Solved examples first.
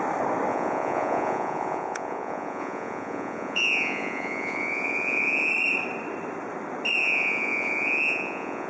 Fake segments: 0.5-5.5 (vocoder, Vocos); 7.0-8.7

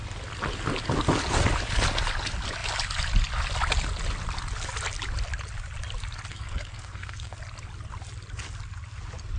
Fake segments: 6.3-7.4 (codec, SNAC)

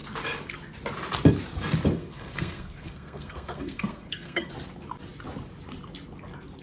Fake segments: 2.0-4.5 (codec, SNAC)

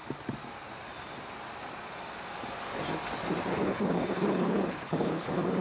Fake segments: 3.5-5.6 (codec, HILCodec)